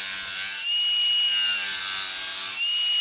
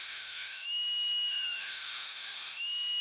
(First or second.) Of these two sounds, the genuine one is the first